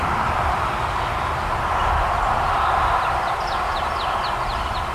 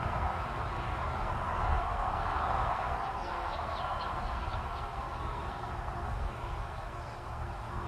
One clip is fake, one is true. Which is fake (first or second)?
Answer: second